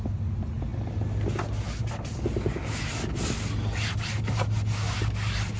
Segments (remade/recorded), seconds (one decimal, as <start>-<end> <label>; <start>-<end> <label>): 0.0-5.6 recorded